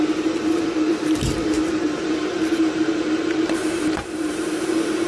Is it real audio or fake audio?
fake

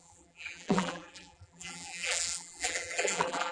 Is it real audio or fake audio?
fake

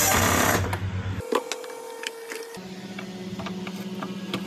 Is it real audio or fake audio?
real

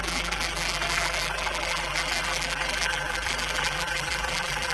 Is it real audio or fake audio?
fake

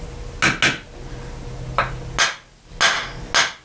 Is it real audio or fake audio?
real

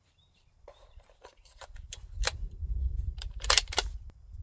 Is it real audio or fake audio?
fake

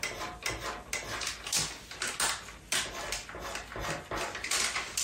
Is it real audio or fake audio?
real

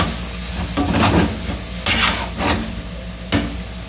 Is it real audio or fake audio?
real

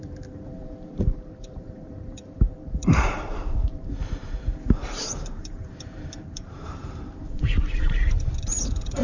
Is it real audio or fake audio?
fake